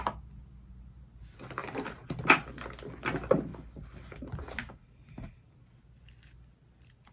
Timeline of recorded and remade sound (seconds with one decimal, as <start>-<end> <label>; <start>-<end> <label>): 0.0-1.6 recorded; 1.6-2.2 remade; 2.2-3.5 recorded; 3.5-5.6 remade; 5.6-7.1 recorded